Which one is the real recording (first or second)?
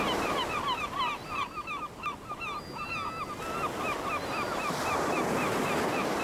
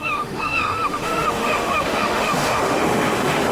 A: first